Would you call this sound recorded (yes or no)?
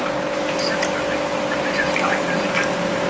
yes